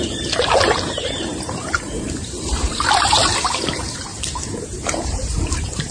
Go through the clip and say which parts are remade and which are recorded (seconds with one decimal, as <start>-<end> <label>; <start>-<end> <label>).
0.0-5.9 remade